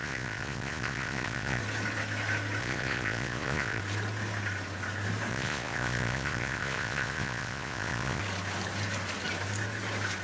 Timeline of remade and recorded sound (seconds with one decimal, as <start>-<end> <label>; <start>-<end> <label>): 0.0-1.6 remade; 1.6-2.6 recorded; 2.6-3.8 remade; 3.8-5.3 recorded; 5.3-8.2 remade; 8.2-10.2 recorded